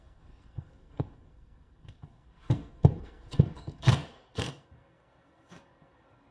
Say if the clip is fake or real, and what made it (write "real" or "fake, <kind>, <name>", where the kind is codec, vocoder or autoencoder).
fake, codec, SNAC